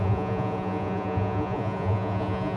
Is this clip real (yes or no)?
no